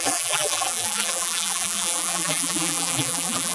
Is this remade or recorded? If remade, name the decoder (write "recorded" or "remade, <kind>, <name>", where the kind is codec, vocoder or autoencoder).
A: remade, vocoder, BigVGAN v2